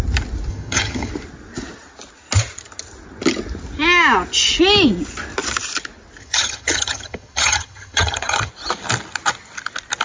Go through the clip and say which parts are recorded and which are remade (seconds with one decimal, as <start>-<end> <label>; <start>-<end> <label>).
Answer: 0.0-0.5 recorded; 0.5-1.1 remade; 1.1-6.2 recorded; 6.2-8.5 remade; 8.5-10.0 recorded